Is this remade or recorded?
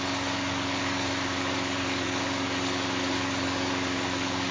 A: remade